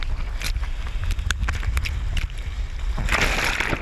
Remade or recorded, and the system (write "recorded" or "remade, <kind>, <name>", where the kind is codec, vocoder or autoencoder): recorded